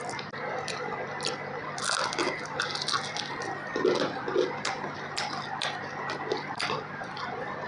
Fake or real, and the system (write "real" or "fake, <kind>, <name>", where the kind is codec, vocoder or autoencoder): real